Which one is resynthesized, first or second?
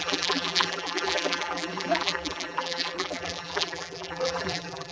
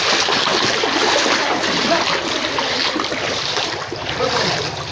first